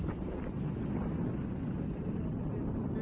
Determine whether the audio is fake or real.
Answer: real